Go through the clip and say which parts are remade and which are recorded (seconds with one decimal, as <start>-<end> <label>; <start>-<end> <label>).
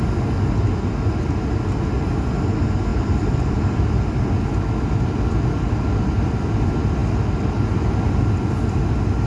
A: 0.0-2.9 recorded; 2.9-3.8 remade; 3.8-9.3 recorded